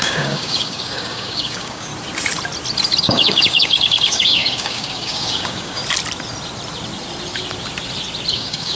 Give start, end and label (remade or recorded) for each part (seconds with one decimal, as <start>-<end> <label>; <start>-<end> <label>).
0.0-1.9 remade; 1.9-3.0 recorded; 3.0-5.8 remade; 5.8-8.3 recorded; 8.3-8.8 remade